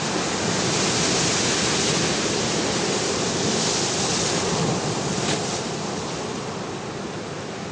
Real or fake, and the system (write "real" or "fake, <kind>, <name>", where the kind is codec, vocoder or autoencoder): real